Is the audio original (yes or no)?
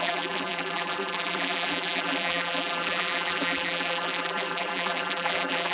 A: no